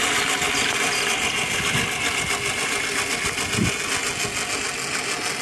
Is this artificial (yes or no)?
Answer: no